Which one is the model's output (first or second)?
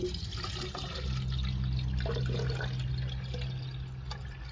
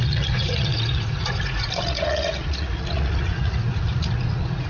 second